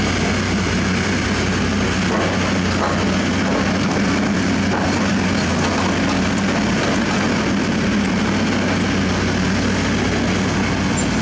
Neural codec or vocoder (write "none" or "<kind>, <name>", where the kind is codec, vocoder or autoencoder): none